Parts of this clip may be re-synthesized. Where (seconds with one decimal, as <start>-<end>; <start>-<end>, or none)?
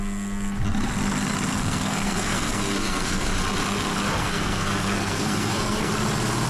1.5-3.3; 4.2-5.9